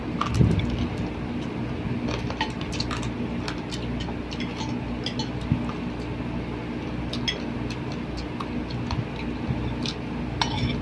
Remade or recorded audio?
recorded